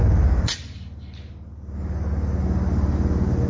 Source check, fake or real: real